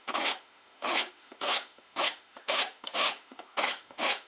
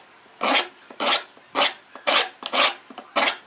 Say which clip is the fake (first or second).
first